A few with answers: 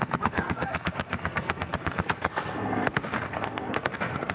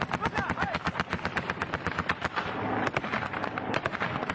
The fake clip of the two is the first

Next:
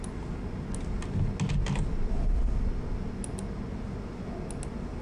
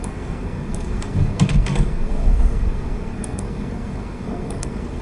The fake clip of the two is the second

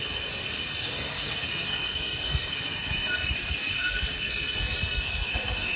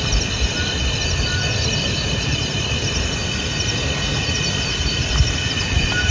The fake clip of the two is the first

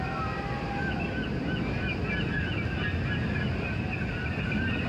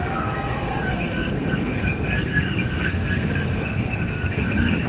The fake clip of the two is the second